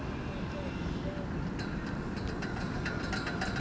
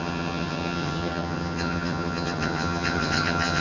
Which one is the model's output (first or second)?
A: second